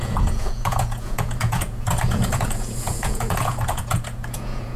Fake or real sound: fake